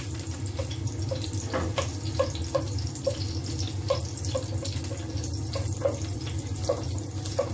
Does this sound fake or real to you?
real